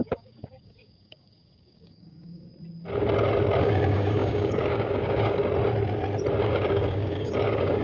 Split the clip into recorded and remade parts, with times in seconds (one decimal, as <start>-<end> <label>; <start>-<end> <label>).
0.0-2.5 remade; 2.5-3.6 recorded; 3.6-5.4 remade; 5.4-6.4 recorded; 6.4-7.8 remade